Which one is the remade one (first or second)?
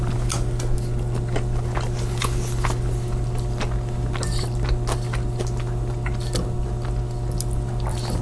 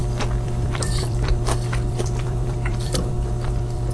second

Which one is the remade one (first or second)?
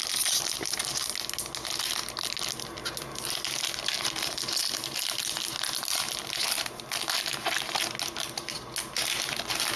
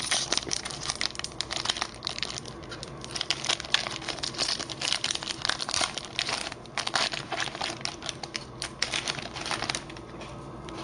second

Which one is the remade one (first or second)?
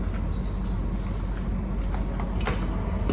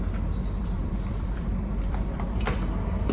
second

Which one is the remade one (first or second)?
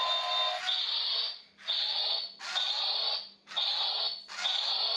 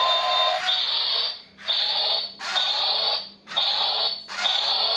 second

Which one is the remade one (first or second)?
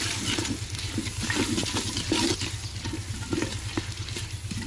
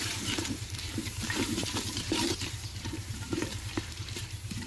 second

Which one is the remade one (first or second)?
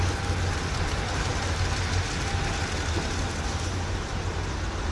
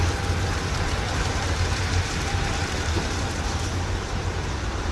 second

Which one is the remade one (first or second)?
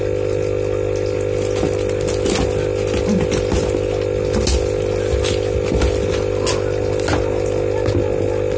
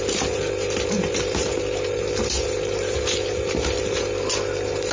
second